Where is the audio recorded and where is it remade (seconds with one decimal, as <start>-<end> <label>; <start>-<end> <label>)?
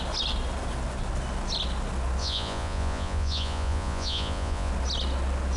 0.0-2.2 recorded; 2.2-4.7 remade; 4.7-5.6 recorded